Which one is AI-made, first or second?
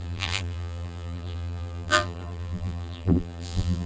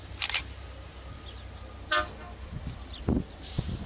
first